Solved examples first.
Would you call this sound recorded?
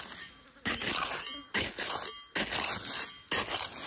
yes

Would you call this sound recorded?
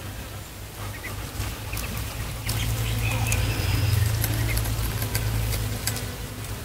yes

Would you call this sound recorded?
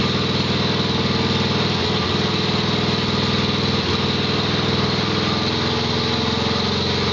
yes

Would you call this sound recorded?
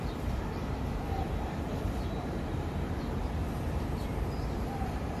no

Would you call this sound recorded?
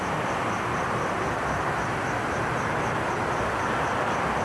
yes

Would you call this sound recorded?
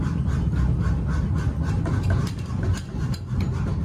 yes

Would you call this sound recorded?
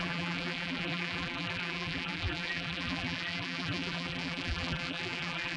no